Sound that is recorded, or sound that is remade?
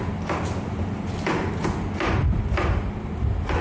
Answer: recorded